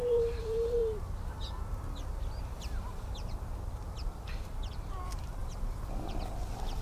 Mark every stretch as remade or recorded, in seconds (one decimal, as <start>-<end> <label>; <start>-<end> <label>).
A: 0.0-0.8 remade; 0.8-4.7 recorded; 4.7-5.4 remade; 5.4-6.1 recorded; 6.1-6.8 remade